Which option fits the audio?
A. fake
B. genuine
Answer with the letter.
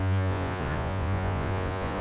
A